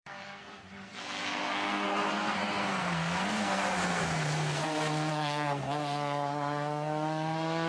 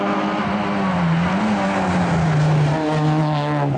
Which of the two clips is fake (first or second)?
first